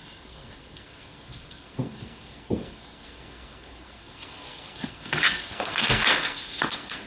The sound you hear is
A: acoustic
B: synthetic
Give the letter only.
B